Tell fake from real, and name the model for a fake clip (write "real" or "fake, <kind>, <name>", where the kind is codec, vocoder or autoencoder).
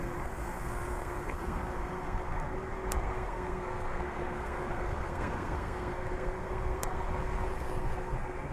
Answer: fake, codec, SNAC